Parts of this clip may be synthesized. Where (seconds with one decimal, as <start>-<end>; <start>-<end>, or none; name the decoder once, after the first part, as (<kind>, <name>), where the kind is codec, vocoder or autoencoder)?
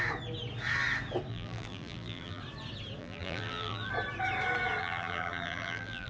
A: 1.3-2.4 (vocoder, BigVGAN v2); 3.0-3.9; 4.8-6.1